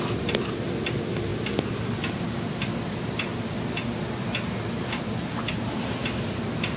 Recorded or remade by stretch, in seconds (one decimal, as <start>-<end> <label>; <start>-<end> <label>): 0.0-6.8 recorded